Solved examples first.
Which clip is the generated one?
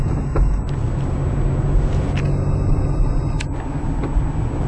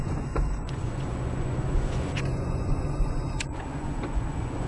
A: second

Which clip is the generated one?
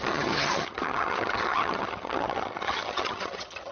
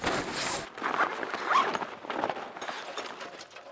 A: first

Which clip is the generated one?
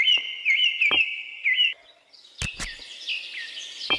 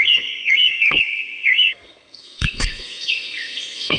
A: second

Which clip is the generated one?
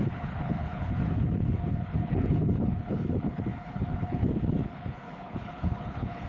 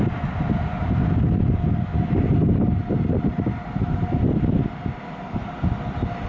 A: first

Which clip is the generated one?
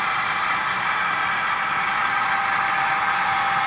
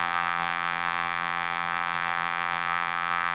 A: second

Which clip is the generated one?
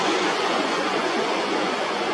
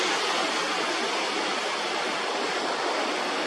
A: first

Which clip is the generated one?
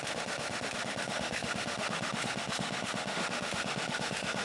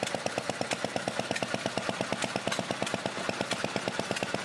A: first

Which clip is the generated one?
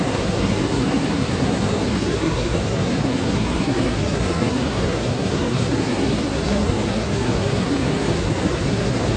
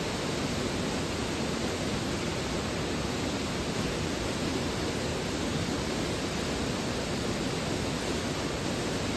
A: first